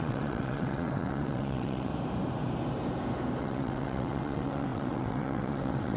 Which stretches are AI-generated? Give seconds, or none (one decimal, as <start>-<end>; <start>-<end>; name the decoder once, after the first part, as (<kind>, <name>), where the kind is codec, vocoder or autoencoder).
0.0-1.9 (vocoder, WaveNeXt); 3.4-6.0